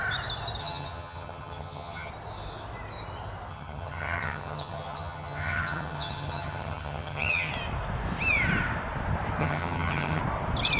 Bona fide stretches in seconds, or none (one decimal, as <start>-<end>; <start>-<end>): 0.0-0.6; 2.1-3.5; 7.5-9.4; 10.2-10.8